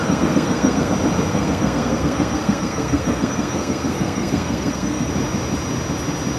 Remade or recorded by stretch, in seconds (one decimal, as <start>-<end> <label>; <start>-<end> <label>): 0.0-0.9 remade; 0.9-1.3 recorded; 1.3-5.1 remade; 5.1-6.4 recorded